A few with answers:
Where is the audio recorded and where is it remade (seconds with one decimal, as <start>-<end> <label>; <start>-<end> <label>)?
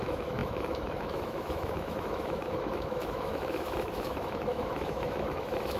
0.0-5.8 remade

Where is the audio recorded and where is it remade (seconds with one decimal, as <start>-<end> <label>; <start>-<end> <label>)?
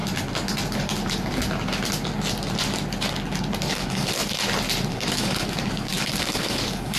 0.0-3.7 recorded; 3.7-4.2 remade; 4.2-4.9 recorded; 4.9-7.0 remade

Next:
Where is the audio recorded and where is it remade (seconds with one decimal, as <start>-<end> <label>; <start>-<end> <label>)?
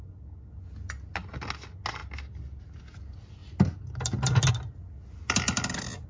0.0-6.1 recorded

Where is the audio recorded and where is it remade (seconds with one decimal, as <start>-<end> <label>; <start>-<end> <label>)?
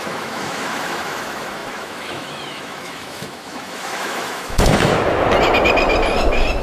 0.0-4.9 remade; 4.9-6.6 recorded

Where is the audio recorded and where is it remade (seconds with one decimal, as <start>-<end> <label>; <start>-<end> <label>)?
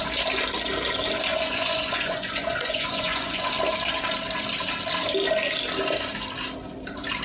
0.0-1.3 recorded; 1.3-3.5 remade; 3.5-7.2 recorded